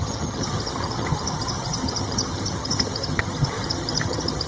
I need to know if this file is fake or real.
fake